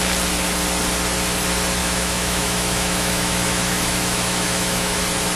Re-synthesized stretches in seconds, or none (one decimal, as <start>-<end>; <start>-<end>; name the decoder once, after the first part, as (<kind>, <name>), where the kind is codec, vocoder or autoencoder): 1.8-5.0 (autoencoder, DAC-VAE)